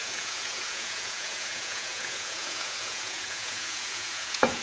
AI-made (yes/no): yes